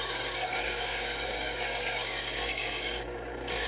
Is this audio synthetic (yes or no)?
yes